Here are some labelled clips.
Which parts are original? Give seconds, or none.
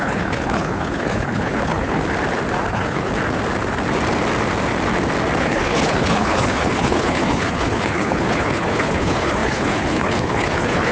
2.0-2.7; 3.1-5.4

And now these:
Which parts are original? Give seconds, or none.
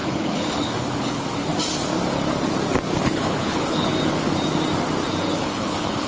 1.5-3.0; 3.9-5.3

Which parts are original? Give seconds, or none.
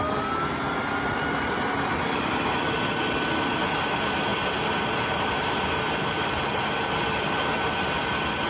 0.0-8.5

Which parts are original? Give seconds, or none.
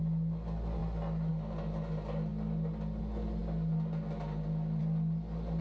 0.0-5.6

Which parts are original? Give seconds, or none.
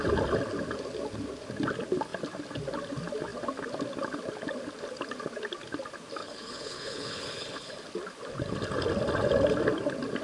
0.0-6.2; 7.7-10.2